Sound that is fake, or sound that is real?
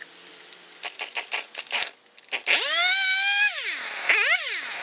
real